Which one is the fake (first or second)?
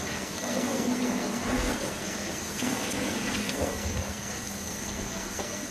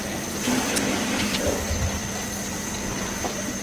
first